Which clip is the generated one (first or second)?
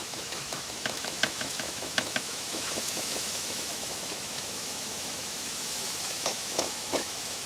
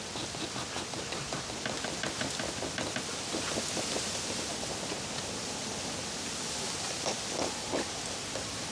first